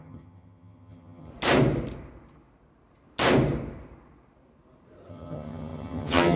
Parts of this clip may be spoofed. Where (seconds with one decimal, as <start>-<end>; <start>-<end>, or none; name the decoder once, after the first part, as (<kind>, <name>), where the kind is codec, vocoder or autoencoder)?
0.0-1.3 (vocoder, HiFi-GAN); 5.1-6.4